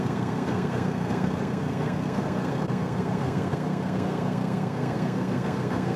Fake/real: fake